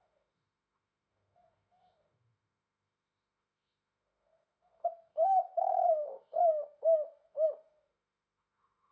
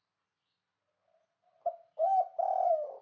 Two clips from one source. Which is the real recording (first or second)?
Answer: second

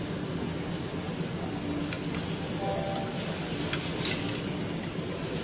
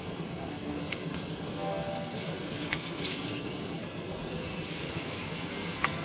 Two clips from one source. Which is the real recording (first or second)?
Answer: first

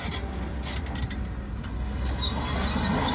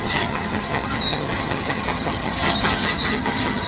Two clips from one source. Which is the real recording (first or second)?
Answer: first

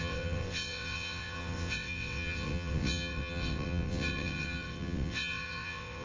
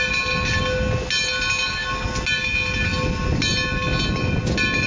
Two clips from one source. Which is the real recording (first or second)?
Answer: second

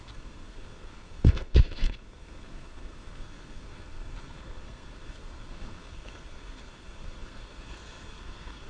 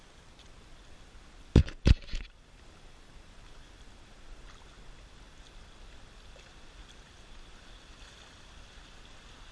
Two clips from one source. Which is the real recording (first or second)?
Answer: second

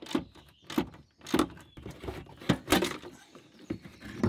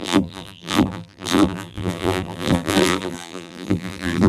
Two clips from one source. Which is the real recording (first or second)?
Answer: first